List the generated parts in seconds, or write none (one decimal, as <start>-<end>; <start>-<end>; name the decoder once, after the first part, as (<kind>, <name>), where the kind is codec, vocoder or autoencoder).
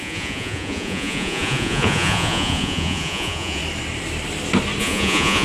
0.0-3.6 (vocoder, Vocos); 4.8-5.4